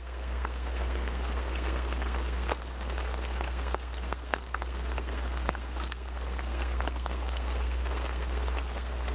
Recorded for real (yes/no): no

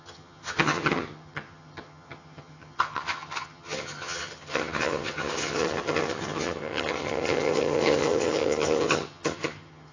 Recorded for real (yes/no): no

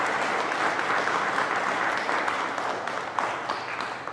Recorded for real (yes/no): yes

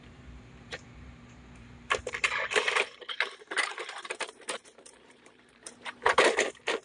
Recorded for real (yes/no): no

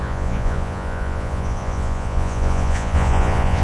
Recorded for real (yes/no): no